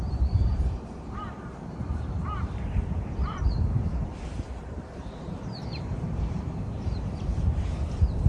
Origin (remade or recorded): remade